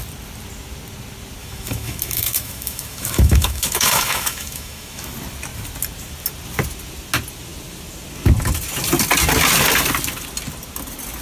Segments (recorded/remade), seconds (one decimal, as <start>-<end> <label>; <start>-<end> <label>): 0.0-1.4 recorded; 1.4-5.1 remade; 5.1-11.2 recorded